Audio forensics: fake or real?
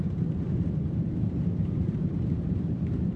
fake